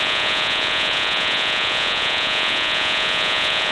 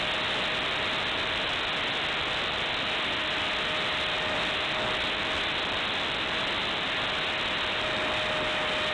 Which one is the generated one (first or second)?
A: first